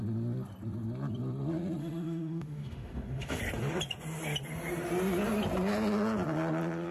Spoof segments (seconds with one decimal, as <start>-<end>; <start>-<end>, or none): 1.8-3.4